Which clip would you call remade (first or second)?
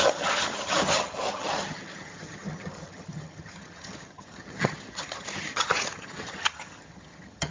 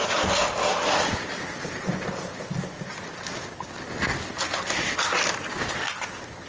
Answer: first